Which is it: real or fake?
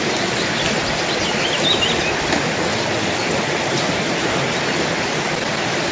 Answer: real